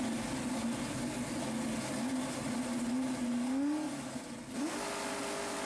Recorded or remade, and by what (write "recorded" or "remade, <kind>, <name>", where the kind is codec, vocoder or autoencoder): recorded